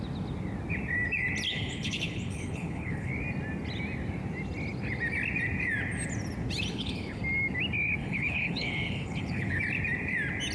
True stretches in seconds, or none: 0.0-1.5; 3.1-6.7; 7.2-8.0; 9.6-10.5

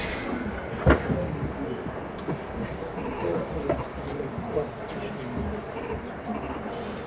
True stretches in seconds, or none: 0.0-7.1

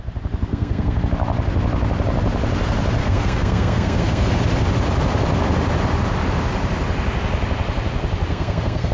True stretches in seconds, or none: 0.0-0.5; 1.0-3.0; 4.3-8.3

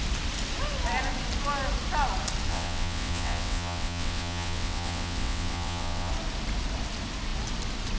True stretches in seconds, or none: 0.0-2.5; 6.1-8.0

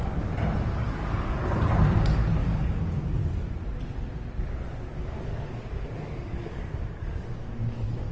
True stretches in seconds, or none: 0.0-0.7; 1.4-2.4; 3.2-4.9